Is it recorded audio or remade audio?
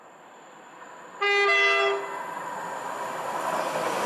recorded